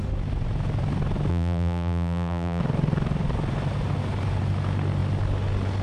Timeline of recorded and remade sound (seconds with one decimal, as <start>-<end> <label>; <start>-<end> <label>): 0.0-1.3 recorded; 1.3-2.6 remade; 2.6-5.8 recorded

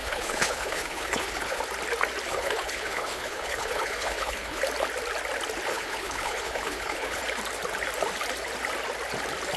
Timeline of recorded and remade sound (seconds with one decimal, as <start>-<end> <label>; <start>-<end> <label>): 0.0-1.6 remade; 1.6-2.3 recorded; 2.3-4.6 remade; 4.6-5.7 recorded; 5.7-7.2 remade; 7.2-9.6 recorded

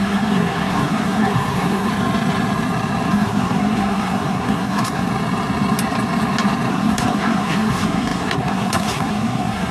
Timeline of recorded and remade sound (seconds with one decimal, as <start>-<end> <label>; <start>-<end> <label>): 0.0-1.9 remade; 1.9-3.1 recorded; 3.1-5.1 remade; 5.1-6.7 recorded; 6.7-9.7 remade

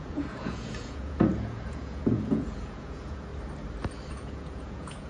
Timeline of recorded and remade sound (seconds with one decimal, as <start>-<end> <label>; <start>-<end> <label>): 0.0-3.3 remade; 3.3-4.1 recorded; 4.1-5.1 remade

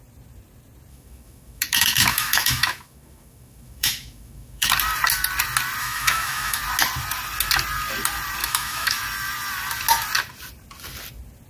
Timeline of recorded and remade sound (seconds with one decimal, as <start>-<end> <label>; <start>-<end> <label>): 0.0-0.9 recorded; 0.9-4.7 remade; 4.7-5.8 recorded; 5.8-6.6 remade; 6.6-8.4 recorded; 8.4-9.0 remade; 9.0-11.5 recorded

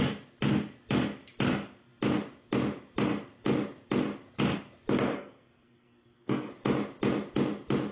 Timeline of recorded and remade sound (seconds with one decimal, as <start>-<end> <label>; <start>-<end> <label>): 0.0-5.2 recorded; 5.2-6.5 remade; 6.5-7.9 recorded